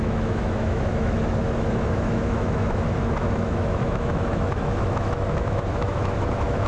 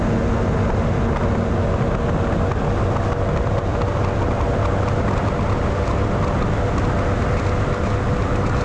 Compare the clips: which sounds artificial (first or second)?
first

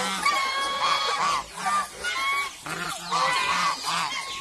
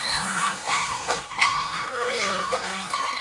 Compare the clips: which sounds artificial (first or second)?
second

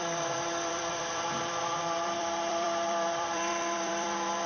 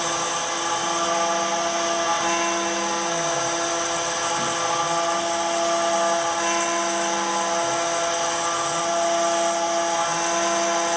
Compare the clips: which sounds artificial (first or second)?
first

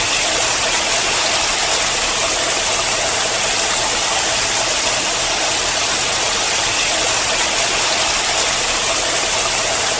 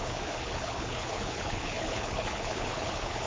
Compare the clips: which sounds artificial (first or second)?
second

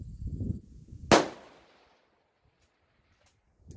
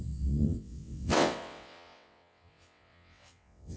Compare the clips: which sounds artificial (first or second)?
second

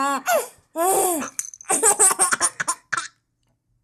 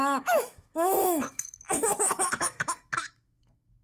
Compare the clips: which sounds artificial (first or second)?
second